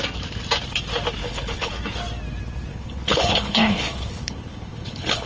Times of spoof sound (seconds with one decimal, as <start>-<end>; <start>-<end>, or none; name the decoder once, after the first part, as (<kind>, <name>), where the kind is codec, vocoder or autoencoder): 1.2-1.7 (codec, HILCodec); 2.7-5.3